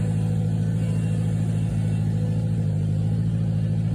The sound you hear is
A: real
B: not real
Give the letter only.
A